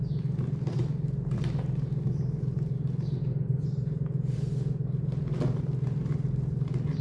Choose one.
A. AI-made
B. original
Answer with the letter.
B